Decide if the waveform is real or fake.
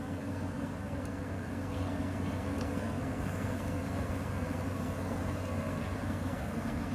fake